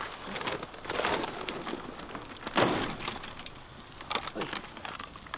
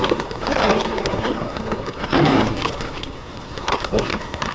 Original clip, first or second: first